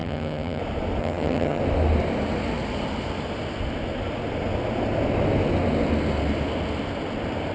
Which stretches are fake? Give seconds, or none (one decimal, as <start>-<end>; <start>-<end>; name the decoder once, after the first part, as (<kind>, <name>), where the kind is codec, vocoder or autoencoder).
0.0-0.6 (vocoder, HiFi-GAN); 1.0-1.6